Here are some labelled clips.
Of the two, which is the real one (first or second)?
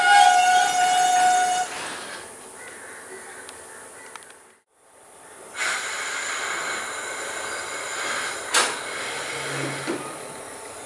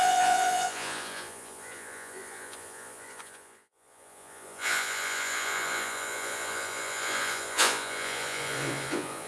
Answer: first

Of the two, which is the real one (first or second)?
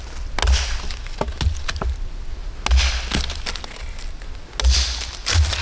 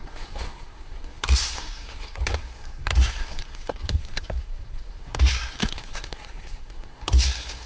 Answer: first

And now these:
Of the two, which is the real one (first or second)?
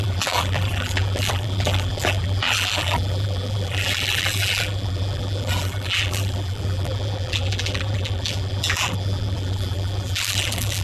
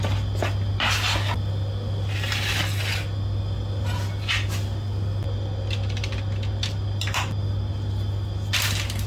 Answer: second